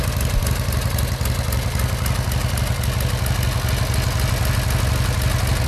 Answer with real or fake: real